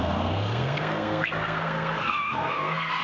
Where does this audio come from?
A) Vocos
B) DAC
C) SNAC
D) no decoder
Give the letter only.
C